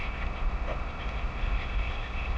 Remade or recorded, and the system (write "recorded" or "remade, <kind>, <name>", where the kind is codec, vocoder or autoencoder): remade, codec, ZipCodec